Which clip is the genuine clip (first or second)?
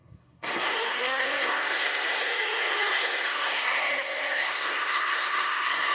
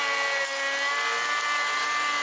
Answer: second